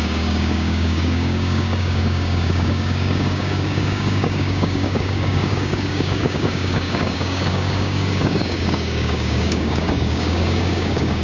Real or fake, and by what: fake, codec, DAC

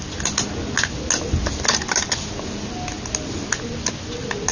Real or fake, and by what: real